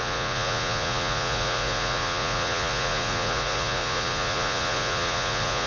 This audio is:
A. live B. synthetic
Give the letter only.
B